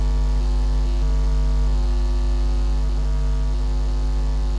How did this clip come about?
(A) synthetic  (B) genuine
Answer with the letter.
B